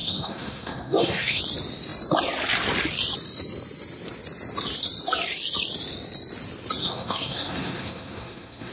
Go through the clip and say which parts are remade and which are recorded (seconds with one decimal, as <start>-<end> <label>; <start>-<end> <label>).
0.0-1.4 remade; 1.4-6.8 recorded; 6.8-8.7 remade

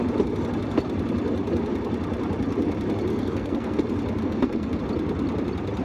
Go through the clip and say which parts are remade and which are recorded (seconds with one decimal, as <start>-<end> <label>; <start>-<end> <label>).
0.0-3.1 recorded; 3.1-3.8 remade; 3.8-4.2 recorded; 4.2-4.8 remade; 4.8-5.8 recorded

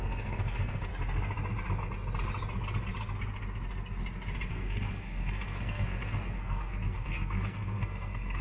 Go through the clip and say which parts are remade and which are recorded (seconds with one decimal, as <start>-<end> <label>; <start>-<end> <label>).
0.0-0.9 remade; 0.9-4.5 recorded; 4.5-8.4 remade

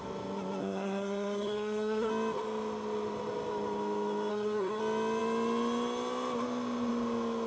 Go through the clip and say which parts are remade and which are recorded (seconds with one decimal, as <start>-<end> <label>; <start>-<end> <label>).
0.0-0.6 recorded; 0.6-2.1 remade; 2.1-4.3 recorded; 4.3-4.8 remade; 4.8-7.5 recorded

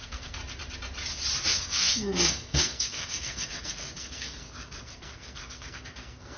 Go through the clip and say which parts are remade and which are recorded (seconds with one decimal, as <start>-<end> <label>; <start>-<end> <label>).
0.0-0.4 remade; 0.4-1.5 recorded; 1.5-6.4 remade

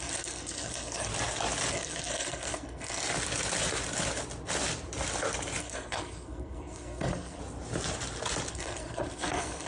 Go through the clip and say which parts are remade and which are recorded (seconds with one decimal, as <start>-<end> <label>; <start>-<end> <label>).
0.0-1.1 remade; 1.1-1.7 recorded; 1.7-3.0 remade; 3.0-5.6 recorded; 5.6-7.4 remade; 7.4-8.5 recorded; 8.5-9.7 remade

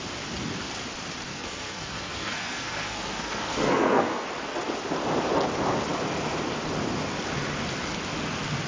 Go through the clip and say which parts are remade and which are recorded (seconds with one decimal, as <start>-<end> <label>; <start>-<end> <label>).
0.0-1.3 recorded; 1.3-4.3 remade; 4.3-8.7 recorded